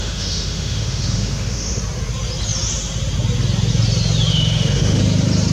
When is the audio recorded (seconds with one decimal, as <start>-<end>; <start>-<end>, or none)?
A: 1.8-4.3; 5.0-5.5

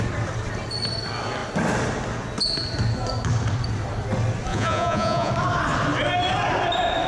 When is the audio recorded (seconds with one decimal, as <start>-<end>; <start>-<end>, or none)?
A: 0.0-4.5; 5.3-7.1

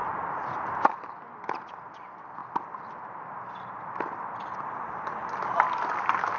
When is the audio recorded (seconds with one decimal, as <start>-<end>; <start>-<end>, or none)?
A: 0.7-6.4

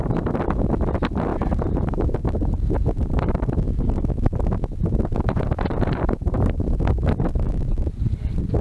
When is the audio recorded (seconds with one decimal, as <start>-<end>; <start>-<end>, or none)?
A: 0.0-1.3; 3.5-4.8; 6.7-8.6

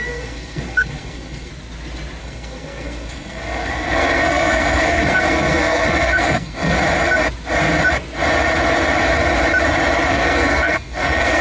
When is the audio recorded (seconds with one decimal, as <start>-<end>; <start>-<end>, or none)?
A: 1.5-2.2; 6.8-10.1

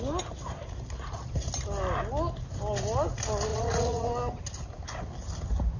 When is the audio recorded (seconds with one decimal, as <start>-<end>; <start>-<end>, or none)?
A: 0.0-3.5; 4.1-5.8